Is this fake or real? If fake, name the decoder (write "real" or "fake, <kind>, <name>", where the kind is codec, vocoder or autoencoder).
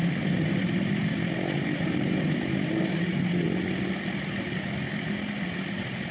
real